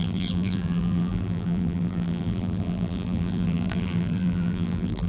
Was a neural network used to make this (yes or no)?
yes